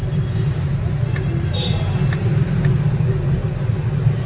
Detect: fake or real real